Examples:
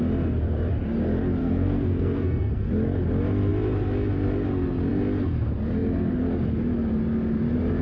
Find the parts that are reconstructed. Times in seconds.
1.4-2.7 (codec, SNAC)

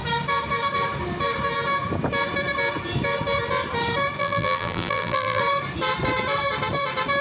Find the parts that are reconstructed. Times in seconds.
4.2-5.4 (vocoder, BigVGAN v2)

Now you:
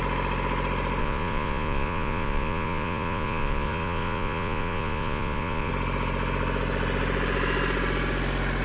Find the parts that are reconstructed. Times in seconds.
1.0-5.7 (vocoder, Vocos)

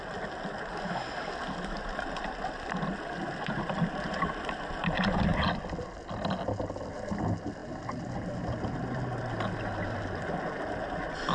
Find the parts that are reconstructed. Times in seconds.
none